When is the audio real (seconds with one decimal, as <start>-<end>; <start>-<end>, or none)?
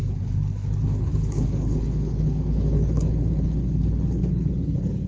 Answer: none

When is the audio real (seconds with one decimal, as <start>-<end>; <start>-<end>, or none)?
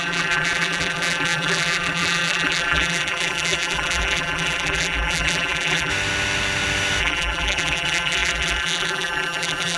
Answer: 5.9-7.0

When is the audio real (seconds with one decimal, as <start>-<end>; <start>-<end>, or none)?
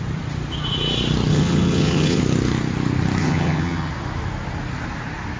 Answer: 0.0-1.3; 2.2-3.2; 3.9-5.4